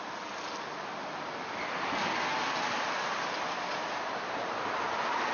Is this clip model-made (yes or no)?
no